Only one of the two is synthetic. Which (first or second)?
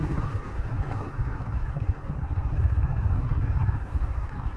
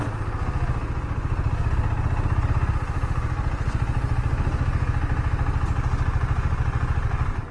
first